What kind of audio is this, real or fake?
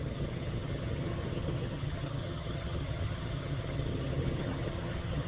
fake